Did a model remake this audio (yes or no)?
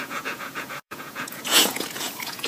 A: yes